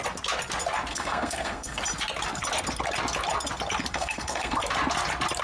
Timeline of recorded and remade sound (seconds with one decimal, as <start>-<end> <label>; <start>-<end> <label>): 0.0-0.9 recorded; 0.9-1.8 remade; 1.8-3.9 recorded; 3.9-4.6 remade; 4.6-5.4 recorded